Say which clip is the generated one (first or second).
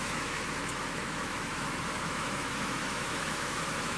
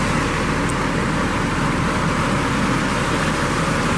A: first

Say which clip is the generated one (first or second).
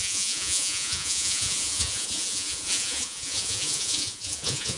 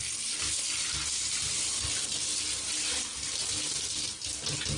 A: first